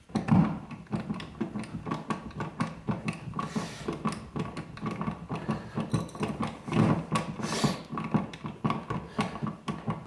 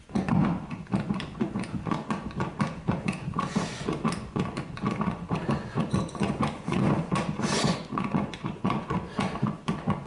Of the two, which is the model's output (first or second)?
second